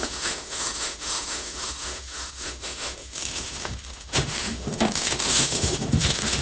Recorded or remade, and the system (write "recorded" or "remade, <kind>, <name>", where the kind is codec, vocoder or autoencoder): remade, autoencoder, DAC-VAE